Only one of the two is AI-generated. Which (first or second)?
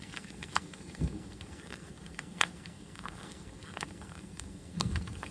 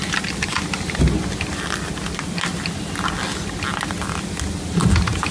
first